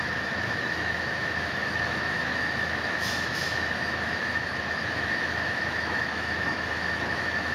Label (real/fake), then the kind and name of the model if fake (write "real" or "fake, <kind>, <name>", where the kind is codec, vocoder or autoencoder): fake, autoencoder, DAC-VAE